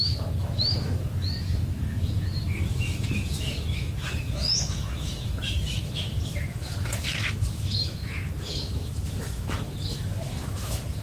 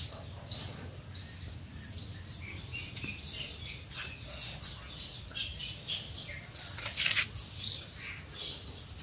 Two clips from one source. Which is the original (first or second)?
second